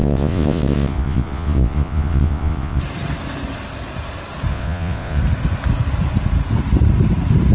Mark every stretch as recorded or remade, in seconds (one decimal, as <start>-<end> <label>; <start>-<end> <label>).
0.0-2.8 remade; 2.8-4.5 recorded; 4.5-5.2 remade; 5.2-7.5 recorded